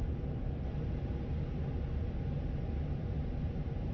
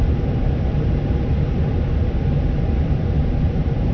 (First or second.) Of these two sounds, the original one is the first